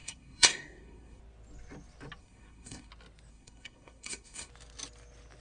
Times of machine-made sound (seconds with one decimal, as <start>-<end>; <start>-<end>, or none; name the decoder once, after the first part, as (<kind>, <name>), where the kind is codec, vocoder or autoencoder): 0.0-1.2 (codec, SNAC); 2.2-2.9; 3.3-4.5